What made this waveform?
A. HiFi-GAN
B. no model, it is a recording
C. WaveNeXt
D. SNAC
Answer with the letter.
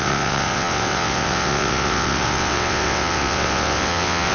C